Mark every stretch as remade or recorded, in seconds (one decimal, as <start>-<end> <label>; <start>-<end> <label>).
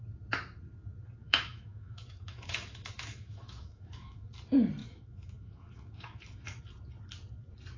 0.0-1.2 recorded; 1.2-4.3 remade; 4.3-4.8 recorded; 4.8-6.6 remade; 6.6-7.8 recorded